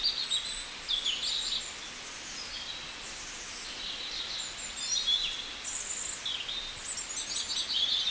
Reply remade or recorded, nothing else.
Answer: recorded